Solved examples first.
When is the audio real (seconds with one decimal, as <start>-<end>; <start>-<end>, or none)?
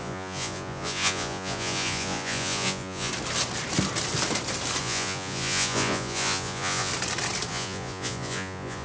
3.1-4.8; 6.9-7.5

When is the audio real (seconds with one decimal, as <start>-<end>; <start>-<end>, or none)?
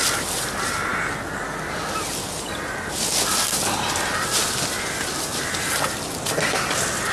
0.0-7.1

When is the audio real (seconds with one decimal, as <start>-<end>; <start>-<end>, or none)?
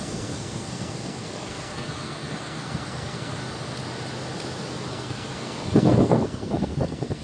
3.4-4.9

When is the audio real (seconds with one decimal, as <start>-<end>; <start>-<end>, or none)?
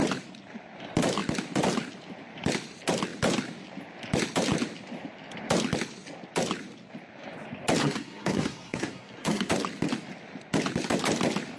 0.0-7.8; 9.5-11.6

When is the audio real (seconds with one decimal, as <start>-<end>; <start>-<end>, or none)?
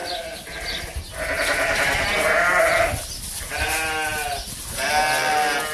0.0-5.7